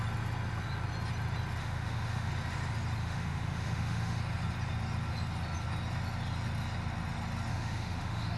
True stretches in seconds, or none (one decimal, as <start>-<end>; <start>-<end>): 0.0-1.6; 2.3-3.0; 4.2-7.5